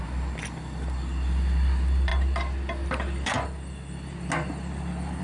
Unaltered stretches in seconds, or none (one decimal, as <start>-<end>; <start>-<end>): 0.0-5.2